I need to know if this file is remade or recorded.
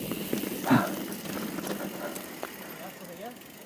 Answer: recorded